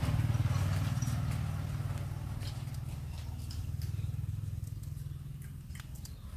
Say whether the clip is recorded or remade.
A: recorded